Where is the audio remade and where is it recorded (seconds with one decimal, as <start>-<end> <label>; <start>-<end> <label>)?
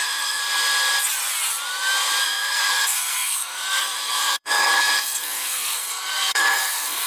0.0-0.4 remade; 0.4-2.2 recorded; 2.2-7.1 remade